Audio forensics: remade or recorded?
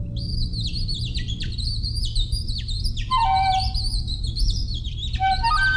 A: remade